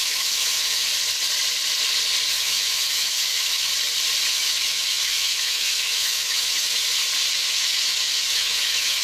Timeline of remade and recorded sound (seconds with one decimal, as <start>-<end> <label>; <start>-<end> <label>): 0.0-0.9 remade; 0.9-2.3 recorded; 2.3-3.7 remade; 3.7-4.3 recorded; 4.3-6.8 remade; 6.8-7.3 recorded; 7.3-9.0 remade